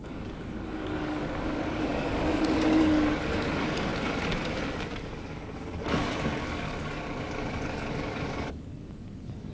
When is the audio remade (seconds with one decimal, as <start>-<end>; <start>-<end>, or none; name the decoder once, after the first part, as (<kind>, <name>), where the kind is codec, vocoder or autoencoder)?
0.0-3.9 (codec, DAC); 5.0-9.5